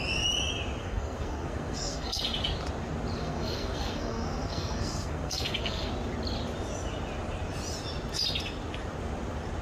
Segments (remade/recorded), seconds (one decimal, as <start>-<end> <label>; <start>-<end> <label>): 0.0-0.8 recorded; 0.8-2.2 remade; 2.2-3.2 recorded; 3.2-5.9 remade; 5.9-9.6 recorded